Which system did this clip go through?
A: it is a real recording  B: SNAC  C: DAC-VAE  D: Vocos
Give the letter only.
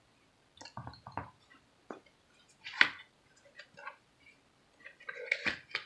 A